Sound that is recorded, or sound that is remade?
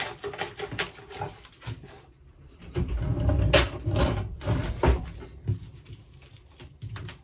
recorded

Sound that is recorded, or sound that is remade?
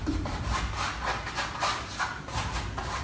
recorded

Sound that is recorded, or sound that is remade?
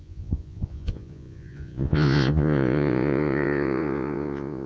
remade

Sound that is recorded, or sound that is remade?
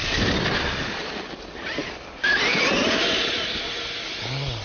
recorded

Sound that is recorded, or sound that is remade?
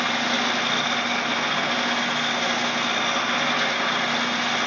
recorded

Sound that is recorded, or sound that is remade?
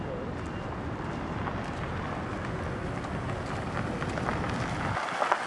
recorded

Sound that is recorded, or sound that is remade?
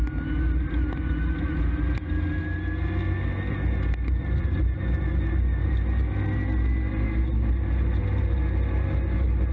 recorded